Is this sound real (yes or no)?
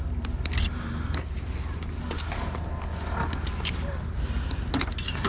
yes